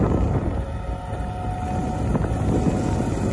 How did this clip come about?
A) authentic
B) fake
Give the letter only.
A